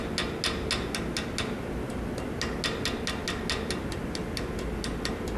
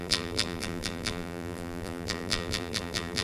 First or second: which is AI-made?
second